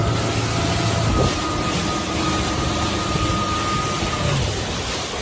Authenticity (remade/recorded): recorded